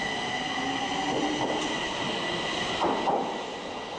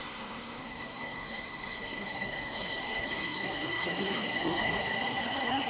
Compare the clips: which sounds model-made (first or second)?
second